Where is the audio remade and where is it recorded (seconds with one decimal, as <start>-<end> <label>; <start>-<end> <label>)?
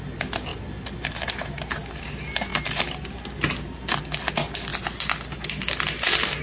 0.0-6.4 recorded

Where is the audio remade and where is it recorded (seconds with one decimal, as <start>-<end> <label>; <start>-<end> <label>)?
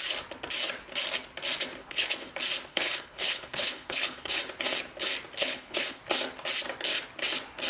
0.0-1.8 recorded; 1.8-2.3 remade; 2.3-2.7 recorded; 2.7-4.4 remade; 4.4-5.4 recorded; 5.4-6.0 remade; 6.0-7.7 recorded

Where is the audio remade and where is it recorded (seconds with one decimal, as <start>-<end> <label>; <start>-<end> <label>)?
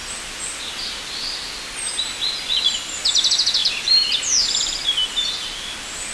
0.0-6.1 recorded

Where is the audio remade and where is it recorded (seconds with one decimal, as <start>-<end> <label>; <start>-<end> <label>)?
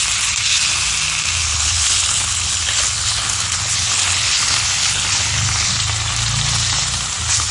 0.0-1.5 recorded; 1.5-5.7 remade; 5.7-7.5 recorded